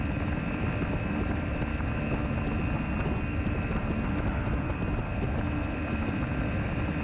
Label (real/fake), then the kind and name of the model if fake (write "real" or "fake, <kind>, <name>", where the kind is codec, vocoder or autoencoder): real